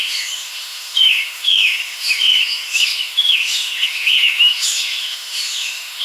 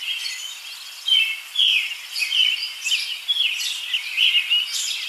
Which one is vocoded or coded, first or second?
first